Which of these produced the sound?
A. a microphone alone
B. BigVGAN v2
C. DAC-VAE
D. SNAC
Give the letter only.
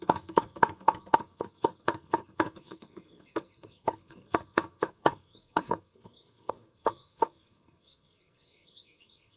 D